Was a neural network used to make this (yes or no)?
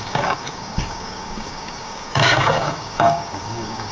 yes